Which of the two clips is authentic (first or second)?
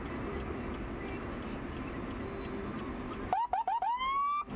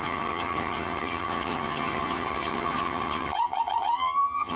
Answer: first